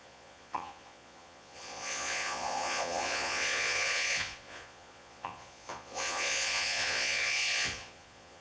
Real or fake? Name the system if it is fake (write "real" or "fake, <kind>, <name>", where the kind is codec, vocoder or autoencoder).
fake, vocoder, Vocos